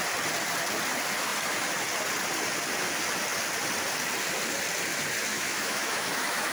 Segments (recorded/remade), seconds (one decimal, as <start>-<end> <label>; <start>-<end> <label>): 0.0-5.3 recorded; 5.3-6.5 remade